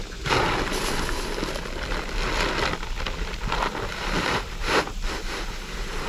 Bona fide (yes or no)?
yes